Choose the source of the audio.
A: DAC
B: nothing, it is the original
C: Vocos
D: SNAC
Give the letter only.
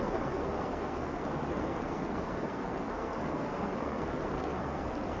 D